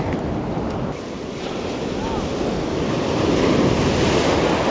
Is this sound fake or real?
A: real